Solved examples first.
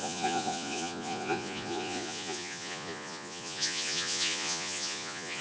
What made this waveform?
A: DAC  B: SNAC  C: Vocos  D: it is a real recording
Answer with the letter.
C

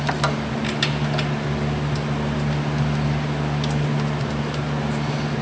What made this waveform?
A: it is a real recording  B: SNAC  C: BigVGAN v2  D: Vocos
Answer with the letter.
A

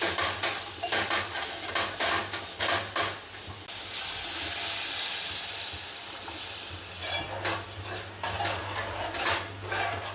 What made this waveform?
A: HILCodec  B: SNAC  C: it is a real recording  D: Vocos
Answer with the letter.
C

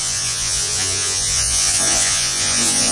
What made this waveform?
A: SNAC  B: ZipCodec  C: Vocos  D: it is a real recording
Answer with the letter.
C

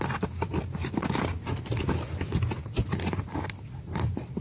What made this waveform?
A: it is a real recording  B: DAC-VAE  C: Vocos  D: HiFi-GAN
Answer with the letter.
A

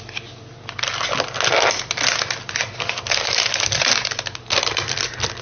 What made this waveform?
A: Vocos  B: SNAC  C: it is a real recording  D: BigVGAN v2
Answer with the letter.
C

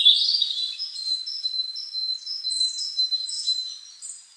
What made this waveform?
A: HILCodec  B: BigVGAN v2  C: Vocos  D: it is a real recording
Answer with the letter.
D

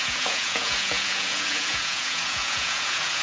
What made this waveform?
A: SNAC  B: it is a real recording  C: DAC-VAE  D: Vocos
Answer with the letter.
D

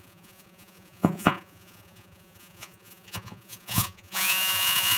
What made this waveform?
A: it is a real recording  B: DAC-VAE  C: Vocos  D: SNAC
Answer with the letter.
C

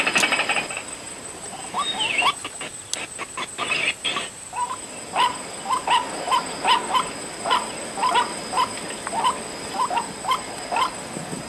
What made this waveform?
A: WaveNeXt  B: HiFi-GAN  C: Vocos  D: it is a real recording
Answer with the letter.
D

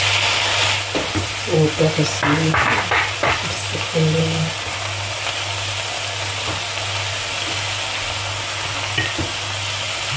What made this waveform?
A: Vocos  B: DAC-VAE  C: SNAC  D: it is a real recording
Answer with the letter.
D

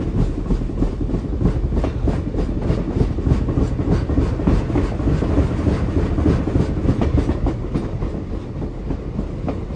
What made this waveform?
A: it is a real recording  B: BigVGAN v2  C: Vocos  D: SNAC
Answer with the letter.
A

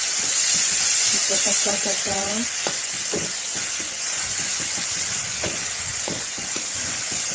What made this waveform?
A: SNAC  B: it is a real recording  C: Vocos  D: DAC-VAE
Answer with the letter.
C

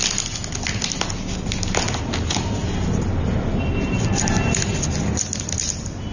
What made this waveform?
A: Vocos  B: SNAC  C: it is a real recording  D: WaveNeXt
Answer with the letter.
C